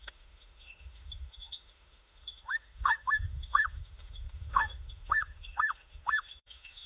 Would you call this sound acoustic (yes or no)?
no